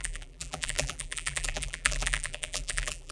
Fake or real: fake